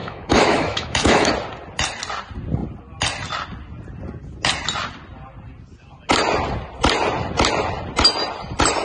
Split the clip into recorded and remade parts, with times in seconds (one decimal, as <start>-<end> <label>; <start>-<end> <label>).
0.0-1.3 remade; 1.3-8.8 recorded